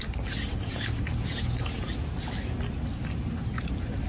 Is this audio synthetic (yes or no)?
no